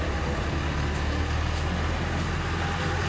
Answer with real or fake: real